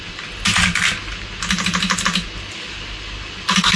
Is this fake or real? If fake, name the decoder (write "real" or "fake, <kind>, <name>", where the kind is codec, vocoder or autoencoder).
real